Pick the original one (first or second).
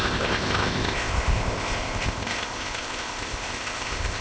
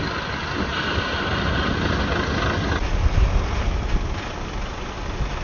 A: second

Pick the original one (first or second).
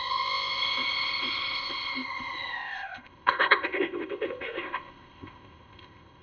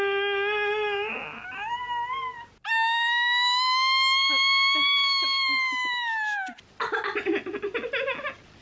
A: second